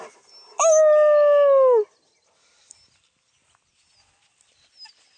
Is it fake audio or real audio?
real